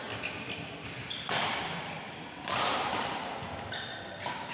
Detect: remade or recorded recorded